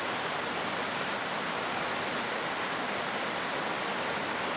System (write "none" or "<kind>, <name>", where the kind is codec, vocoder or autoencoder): none